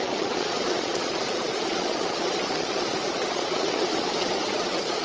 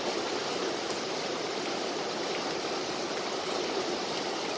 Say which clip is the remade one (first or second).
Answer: first